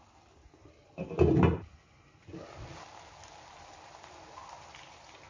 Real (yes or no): yes